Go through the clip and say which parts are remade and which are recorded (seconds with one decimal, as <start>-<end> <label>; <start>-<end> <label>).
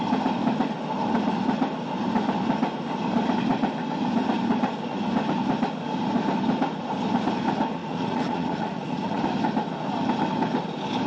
0.0-7.8 recorded; 7.8-9.2 remade; 9.2-11.1 recorded